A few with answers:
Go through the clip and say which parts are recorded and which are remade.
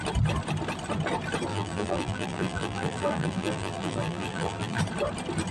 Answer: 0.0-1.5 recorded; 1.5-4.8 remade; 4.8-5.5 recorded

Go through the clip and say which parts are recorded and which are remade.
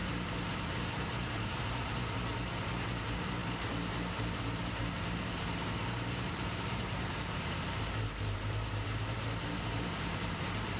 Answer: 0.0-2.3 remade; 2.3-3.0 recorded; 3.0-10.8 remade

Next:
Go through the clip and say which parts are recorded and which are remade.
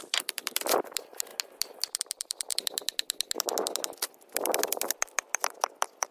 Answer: 0.0-1.3 remade; 1.3-2.0 recorded; 2.0-2.5 remade; 2.5-6.1 recorded